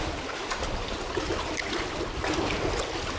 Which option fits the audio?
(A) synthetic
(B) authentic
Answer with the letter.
B